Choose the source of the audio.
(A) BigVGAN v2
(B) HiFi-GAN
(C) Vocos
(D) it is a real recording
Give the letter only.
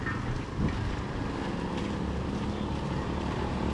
D